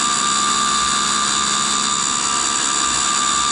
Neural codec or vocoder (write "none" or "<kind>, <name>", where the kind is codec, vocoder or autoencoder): none